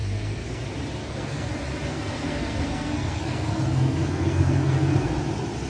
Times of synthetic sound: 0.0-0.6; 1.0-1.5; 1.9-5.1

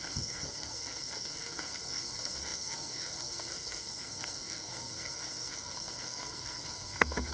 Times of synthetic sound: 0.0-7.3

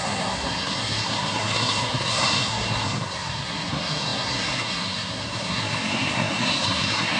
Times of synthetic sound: 0.0-7.2

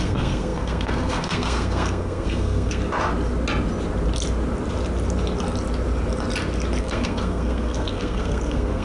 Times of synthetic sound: 0.0-2.8; 6.8-8.8

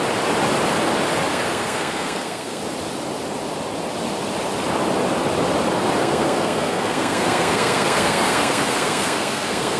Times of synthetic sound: 1.3-2.6; 6.0-9.8

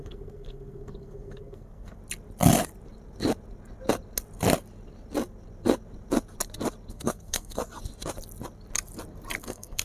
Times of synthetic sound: 0.0-2.0; 6.9-7.6; 9.4-9.8

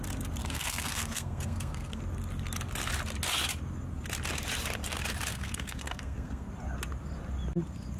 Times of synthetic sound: 0.4-2.0; 5.3-6.5

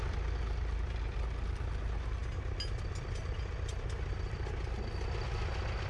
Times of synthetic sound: none